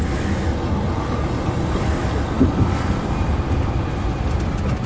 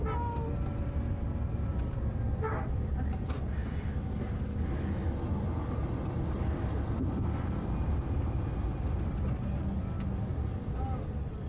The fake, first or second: first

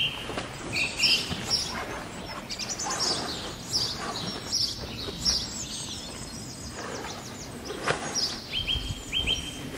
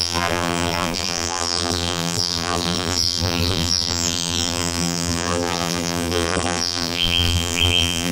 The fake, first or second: second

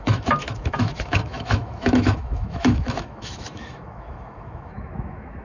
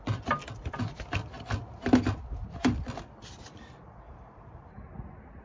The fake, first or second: first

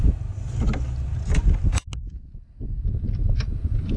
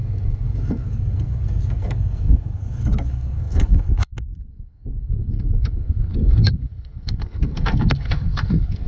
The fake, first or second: second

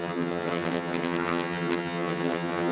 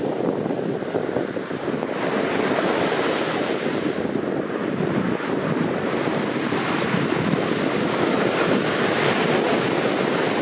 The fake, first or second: first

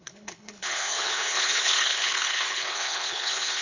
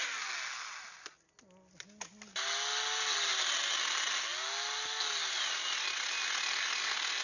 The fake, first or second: first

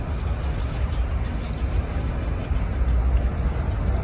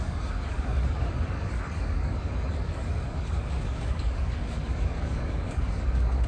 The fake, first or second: second